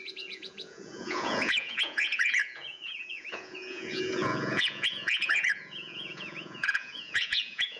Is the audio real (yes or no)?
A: no